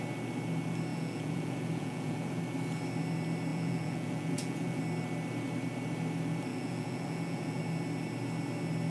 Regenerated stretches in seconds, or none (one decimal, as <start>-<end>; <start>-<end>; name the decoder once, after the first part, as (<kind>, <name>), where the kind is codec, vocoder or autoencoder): 0.9-2.4 (vocoder, Vocos); 3.5-4.8; 6.5-7.6